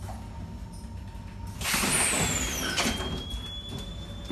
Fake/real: real